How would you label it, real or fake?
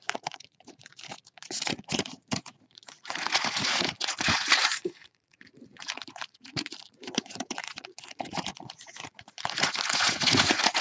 fake